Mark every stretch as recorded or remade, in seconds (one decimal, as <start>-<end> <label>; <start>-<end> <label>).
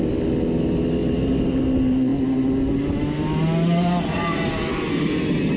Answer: 0.0-5.6 recorded